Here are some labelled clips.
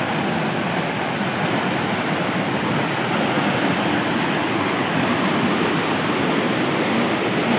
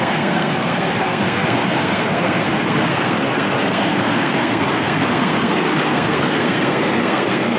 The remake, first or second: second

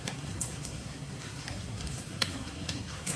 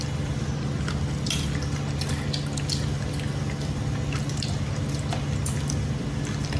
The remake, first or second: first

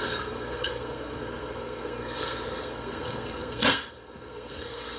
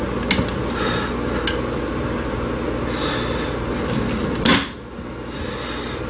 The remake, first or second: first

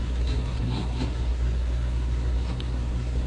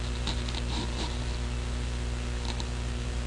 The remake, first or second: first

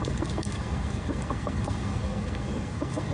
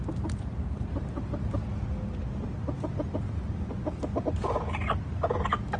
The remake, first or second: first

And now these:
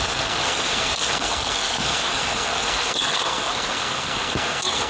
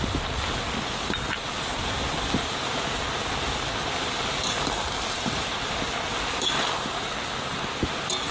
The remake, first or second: first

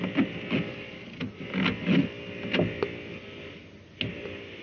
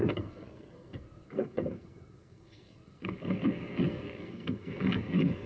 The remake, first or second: second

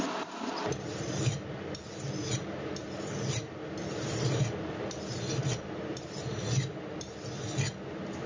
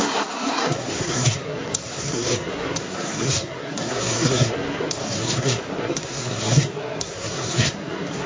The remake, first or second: second